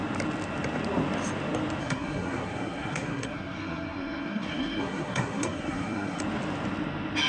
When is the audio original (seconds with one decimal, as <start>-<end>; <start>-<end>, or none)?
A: 0.0-1.8; 6.2-7.3